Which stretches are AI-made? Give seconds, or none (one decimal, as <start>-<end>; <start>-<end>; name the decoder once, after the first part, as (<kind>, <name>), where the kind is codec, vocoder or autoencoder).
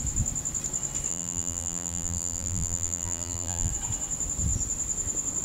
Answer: 1.1-3.7 (vocoder, BigVGAN v2)